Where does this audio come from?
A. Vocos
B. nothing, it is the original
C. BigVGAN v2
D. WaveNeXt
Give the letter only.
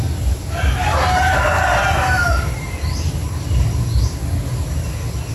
B